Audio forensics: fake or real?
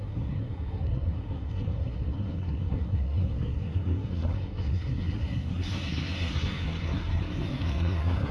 fake